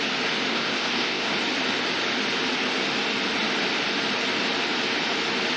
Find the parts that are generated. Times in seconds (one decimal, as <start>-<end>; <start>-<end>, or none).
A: 0.5-1.3